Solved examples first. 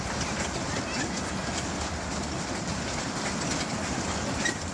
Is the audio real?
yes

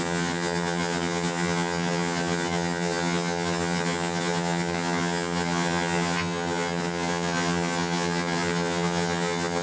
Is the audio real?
no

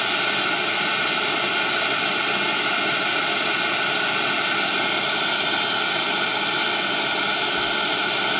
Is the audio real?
yes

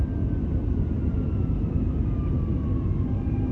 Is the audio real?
yes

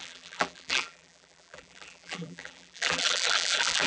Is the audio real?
no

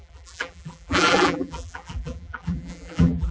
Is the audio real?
no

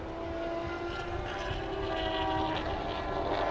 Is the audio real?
yes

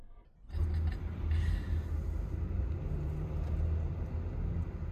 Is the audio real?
yes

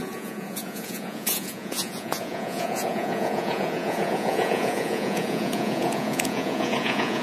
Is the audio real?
no